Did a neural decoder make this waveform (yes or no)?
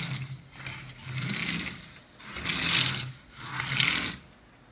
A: no